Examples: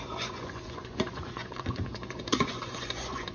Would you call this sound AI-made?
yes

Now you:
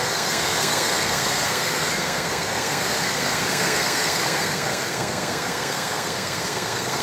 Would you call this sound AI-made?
yes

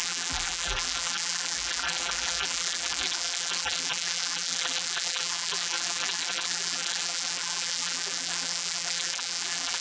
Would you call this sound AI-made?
yes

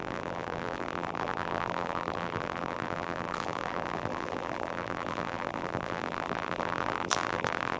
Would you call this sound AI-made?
yes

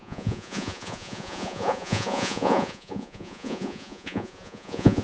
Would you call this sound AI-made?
yes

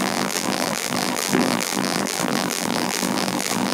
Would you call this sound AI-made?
yes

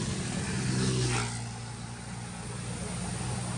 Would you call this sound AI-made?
no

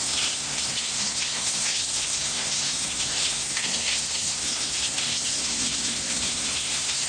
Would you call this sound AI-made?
yes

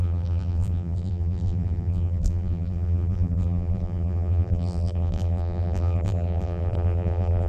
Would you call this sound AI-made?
yes